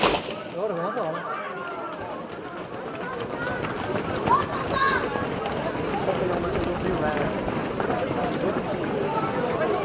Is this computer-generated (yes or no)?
no